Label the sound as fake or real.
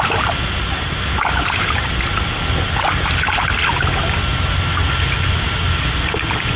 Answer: real